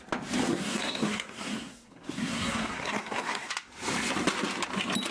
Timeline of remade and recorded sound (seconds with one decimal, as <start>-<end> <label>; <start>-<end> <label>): 0.0-0.4 recorded; 0.4-3.5 remade; 3.5-5.1 recorded